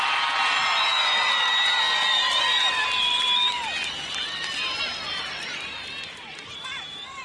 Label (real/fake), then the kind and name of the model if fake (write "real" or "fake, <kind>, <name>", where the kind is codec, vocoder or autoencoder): fake, vocoder, BigVGAN v2